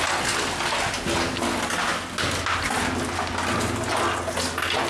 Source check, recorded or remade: recorded